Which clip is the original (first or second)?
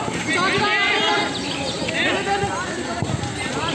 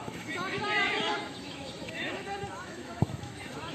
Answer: first